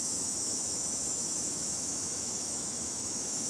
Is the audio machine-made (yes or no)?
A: yes